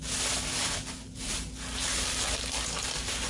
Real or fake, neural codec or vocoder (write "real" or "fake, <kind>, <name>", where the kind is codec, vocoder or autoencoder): real